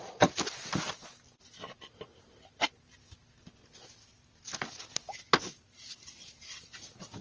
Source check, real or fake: real